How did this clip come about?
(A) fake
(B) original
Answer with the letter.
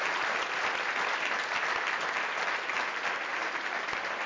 B